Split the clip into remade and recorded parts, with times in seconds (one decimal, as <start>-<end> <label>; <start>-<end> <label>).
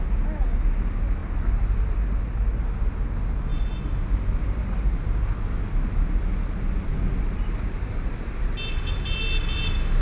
0.0-10.0 recorded